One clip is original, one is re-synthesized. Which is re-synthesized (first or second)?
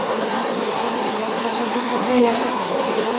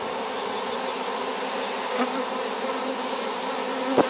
first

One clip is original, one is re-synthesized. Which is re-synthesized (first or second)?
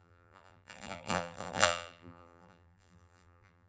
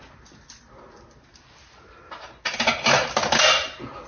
first